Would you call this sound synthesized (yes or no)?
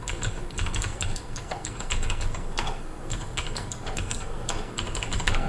yes